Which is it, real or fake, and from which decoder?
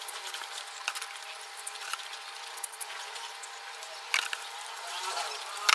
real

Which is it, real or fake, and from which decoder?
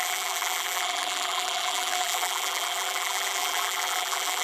fake, vocoder, BigVGAN v2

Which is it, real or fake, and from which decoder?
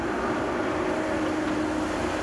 real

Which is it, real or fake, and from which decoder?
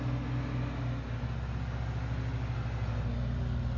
real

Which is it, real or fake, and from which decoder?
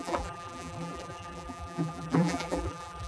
fake, vocoder, BigVGAN v2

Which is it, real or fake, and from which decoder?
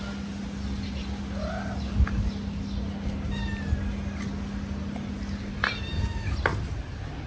real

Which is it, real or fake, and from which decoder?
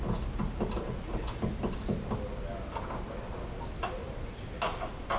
real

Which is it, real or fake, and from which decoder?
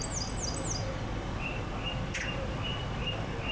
real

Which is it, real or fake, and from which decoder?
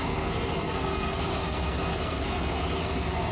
fake, codec, SNAC